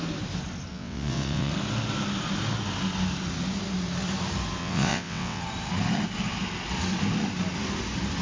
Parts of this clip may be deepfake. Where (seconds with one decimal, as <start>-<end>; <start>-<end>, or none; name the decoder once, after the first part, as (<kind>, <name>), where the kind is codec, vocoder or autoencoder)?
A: 0.7-1.5 (vocoder, WaveNeXt); 4.6-5.4